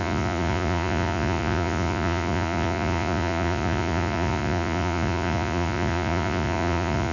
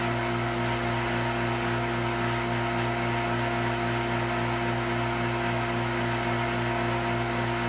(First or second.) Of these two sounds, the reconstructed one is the first